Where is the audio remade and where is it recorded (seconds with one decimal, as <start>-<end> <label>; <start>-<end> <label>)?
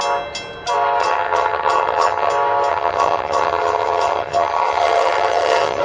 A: 0.0-1.0 recorded; 1.0-2.3 remade; 2.3-2.7 recorded; 2.7-5.8 remade